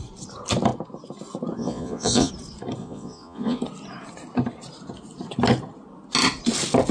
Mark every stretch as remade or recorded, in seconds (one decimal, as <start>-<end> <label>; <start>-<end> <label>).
0.0-1.6 recorded; 1.6-2.3 remade; 2.3-2.8 recorded; 2.8-3.6 remade; 3.6-6.9 recorded